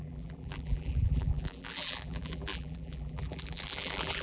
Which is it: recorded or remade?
remade